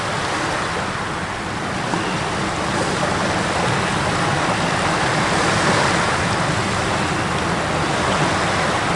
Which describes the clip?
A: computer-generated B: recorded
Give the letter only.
B